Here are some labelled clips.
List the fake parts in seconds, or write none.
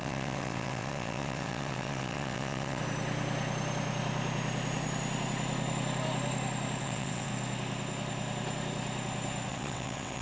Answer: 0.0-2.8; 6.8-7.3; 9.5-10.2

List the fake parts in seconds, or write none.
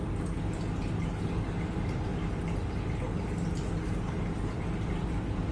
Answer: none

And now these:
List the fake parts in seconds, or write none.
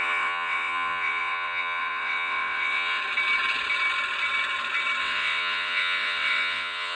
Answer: 0.0-3.0; 5.0-7.0